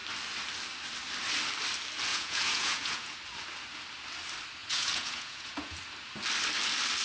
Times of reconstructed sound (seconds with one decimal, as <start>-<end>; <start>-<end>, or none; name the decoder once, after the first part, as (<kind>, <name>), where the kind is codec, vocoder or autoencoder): 2.1-3.2 (vocoder, Vocos); 4.6-5.8

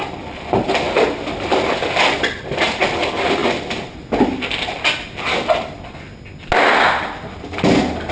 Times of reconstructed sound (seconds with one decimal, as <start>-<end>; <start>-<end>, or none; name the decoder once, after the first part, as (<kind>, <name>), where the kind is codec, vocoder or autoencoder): none

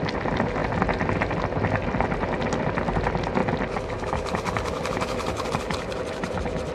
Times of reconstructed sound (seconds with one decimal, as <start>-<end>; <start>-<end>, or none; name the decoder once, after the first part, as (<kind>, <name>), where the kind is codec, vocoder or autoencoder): none

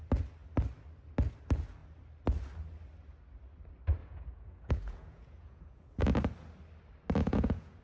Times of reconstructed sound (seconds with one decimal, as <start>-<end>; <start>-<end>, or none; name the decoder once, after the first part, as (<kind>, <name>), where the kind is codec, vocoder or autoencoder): 4.0-6.0 (vocoder, Vocos); 7.2-7.8

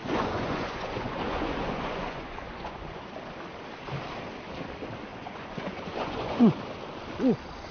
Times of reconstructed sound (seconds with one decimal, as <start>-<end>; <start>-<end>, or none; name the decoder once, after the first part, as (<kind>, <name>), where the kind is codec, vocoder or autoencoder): 0.0-3.0 (vocoder, Vocos); 5.1-6.6

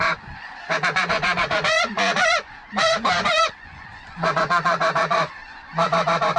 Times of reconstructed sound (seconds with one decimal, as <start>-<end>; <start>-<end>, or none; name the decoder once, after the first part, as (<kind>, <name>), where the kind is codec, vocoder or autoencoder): 0.0-6.4 (vocoder, Vocos)

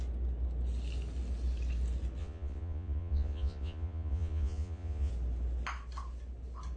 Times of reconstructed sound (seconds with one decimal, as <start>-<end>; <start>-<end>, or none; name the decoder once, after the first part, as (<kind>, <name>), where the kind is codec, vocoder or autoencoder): 2.2-5.1 (vocoder, Vocos)